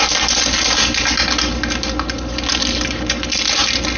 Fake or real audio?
real